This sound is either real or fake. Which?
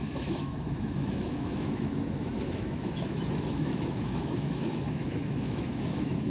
fake